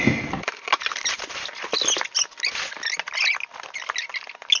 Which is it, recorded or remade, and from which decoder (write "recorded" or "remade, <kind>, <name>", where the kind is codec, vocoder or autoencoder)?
recorded